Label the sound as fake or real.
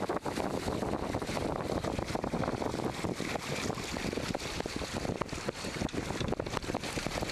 real